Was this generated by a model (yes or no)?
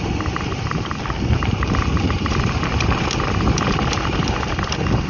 yes